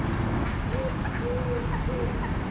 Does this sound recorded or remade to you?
recorded